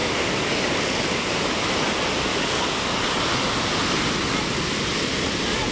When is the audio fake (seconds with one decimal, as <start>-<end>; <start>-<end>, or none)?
0.0-1.1; 2.3-3.2